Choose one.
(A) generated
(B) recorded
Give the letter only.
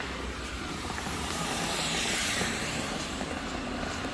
A